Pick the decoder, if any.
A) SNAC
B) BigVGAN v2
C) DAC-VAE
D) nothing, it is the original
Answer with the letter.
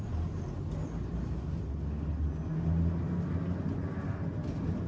D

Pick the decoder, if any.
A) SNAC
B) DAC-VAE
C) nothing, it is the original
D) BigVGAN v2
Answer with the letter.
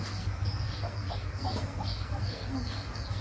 A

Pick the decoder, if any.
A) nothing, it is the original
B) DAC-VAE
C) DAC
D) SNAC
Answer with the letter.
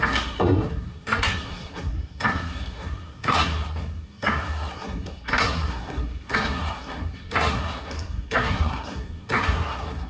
D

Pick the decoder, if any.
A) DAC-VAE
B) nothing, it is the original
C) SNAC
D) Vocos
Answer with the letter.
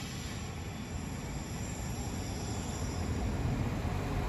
B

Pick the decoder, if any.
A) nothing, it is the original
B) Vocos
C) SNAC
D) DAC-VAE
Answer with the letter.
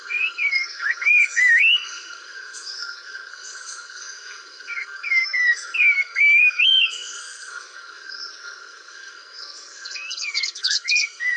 C